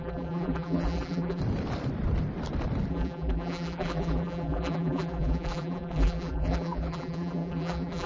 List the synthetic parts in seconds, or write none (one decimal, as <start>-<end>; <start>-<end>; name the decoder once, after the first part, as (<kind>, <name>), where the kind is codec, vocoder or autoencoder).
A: 0.0-1.4 (vocoder, BigVGAN v2); 2.9-8.1